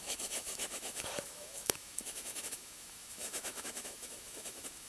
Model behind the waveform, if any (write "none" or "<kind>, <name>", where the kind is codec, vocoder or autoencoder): autoencoder, DAC-VAE